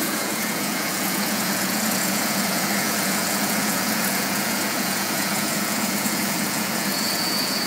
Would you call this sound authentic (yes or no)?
no